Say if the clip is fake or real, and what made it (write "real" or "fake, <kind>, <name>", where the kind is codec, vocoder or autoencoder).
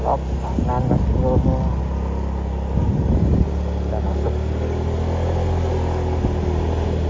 real